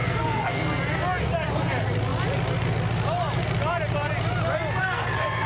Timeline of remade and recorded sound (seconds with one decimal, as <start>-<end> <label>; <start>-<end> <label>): 0.0-0.6 remade; 0.6-4.8 recorded; 4.8-5.5 remade